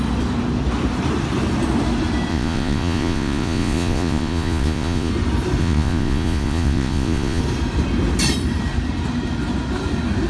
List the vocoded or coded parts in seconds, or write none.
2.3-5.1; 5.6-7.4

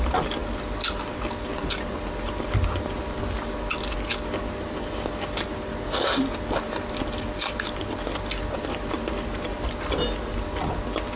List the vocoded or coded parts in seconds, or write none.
none

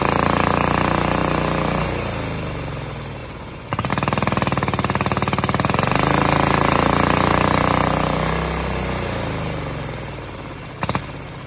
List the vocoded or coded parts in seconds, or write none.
3.2-3.9

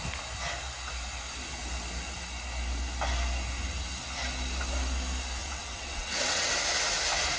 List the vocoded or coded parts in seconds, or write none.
5.4-6.5

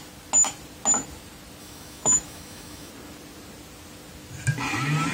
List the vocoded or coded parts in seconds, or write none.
1.6-2.9

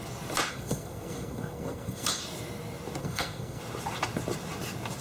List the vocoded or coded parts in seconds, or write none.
0.5-2.2; 3.0-3.6

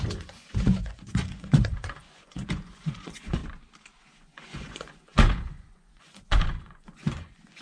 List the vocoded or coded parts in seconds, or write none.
0.0-3.4; 4.0-7.6